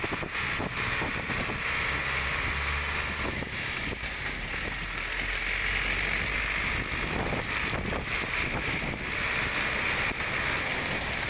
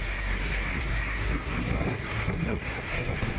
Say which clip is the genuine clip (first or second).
first